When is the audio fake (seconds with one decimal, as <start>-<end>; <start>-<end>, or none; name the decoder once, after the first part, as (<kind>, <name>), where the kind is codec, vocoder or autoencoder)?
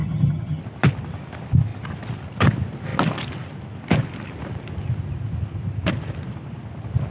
0.0-0.6 (vocoder, HiFi-GAN)